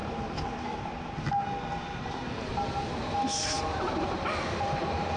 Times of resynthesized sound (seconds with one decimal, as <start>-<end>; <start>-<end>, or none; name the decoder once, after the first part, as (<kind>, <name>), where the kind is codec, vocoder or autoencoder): none